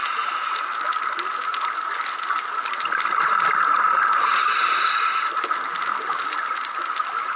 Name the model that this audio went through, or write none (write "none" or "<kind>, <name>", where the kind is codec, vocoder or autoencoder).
none